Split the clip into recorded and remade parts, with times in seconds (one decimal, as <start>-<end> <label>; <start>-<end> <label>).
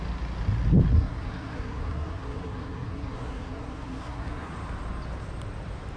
0.0-0.9 recorded; 0.9-4.5 remade; 4.5-6.0 recorded